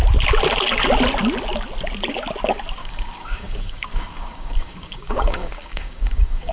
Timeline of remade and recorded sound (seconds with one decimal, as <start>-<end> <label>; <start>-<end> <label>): 0.0-2.8 recorded; 2.8-6.5 remade